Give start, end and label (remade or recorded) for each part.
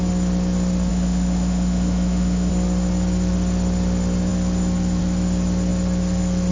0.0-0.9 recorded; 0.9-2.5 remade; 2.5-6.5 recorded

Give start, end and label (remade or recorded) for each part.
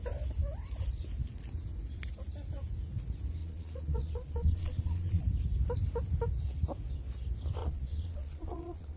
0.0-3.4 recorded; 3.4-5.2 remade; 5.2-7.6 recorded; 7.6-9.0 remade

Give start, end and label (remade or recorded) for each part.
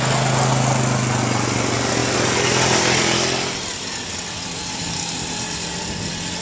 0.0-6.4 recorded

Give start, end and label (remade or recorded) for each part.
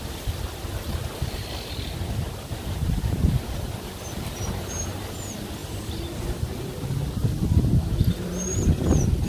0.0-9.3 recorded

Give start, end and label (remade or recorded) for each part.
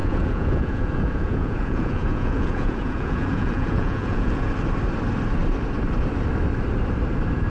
0.0-4.5 remade; 4.5-7.5 recorded